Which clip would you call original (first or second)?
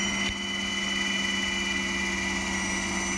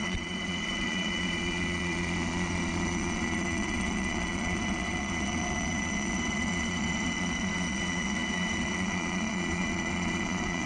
first